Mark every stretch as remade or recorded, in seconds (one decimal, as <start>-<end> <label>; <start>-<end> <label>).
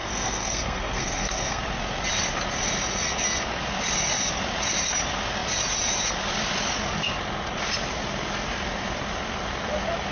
0.0-1.6 remade; 1.6-10.1 recorded